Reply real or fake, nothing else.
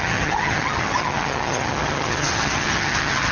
fake